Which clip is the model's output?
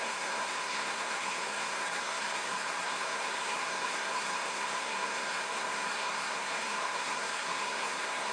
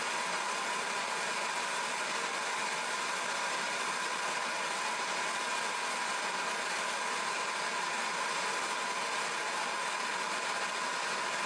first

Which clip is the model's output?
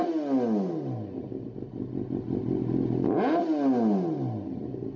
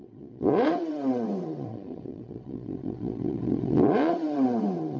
second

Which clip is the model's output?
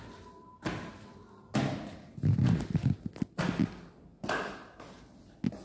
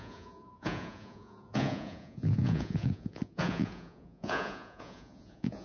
second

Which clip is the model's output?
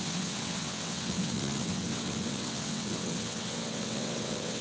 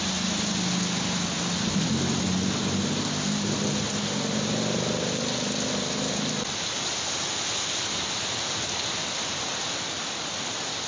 first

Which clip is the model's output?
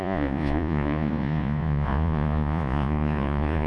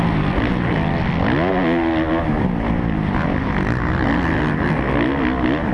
first